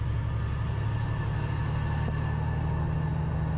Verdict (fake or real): real